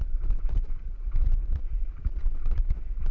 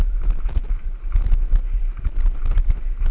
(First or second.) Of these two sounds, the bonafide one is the second